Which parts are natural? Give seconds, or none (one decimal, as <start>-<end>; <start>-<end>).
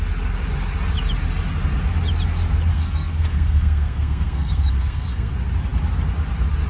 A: 0.0-2.7; 5.3-6.7